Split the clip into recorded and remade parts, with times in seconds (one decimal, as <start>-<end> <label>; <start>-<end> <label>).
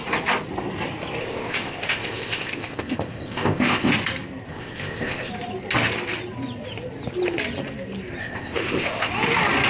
0.0-1.2 recorded; 1.2-3.9 remade; 3.9-4.5 recorded; 4.5-5.3 remade; 5.3-8.2 recorded; 8.2-9.1 remade; 9.1-9.7 recorded